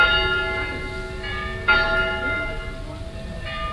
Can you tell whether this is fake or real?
real